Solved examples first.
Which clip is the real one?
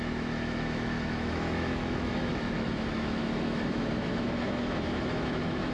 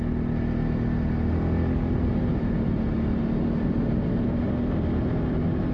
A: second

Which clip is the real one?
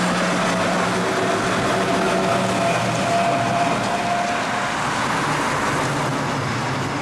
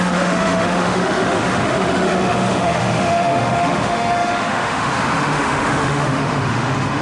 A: first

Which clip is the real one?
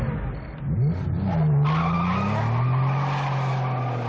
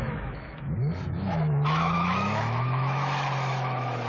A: first